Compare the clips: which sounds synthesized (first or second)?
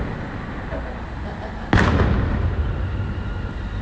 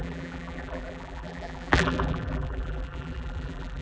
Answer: second